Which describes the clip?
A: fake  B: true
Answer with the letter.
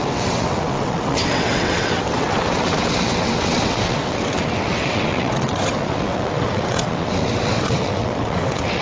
A